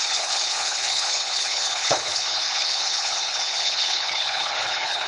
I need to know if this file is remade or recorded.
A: remade